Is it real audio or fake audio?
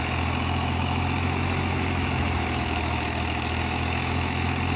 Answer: fake